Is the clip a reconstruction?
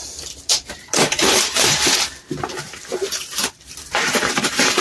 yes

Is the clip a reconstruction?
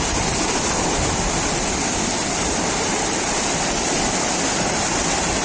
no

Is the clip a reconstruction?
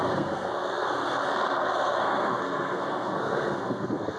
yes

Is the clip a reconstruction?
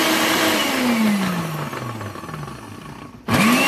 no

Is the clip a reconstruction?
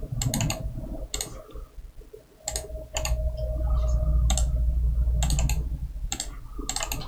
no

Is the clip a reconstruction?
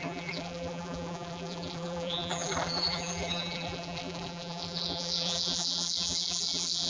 yes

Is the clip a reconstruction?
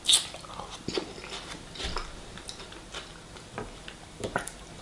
no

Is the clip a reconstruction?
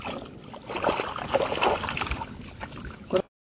no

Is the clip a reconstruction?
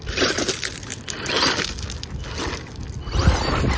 no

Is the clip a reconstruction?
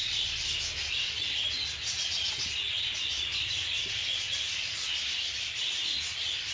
no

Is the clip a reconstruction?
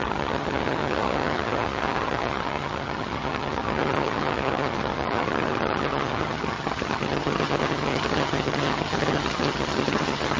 yes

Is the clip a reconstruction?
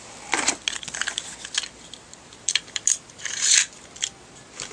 no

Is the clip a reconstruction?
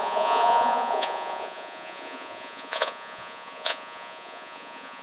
yes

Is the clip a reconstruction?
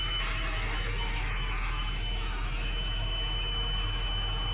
yes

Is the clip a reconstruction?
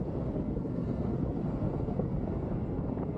yes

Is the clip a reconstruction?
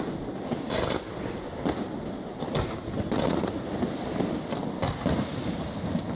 no